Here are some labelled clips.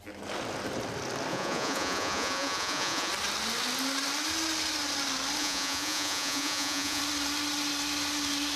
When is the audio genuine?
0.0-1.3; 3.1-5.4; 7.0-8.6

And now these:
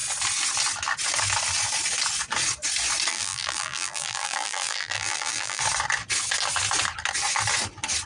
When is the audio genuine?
0.0-3.1; 5.6-8.1

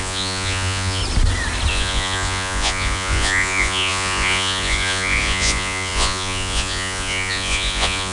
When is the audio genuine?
1.0-1.7

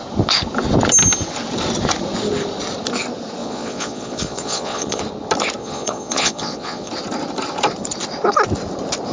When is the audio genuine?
0.0-3.4; 5.0-5.6; 6.9-9.1

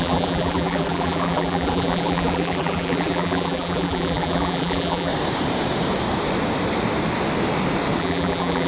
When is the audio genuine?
5.1-8.0

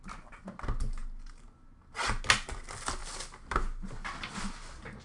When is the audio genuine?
0.0-5.0